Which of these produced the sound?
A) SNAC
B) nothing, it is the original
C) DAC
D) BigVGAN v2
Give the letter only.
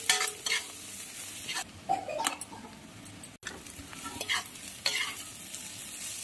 B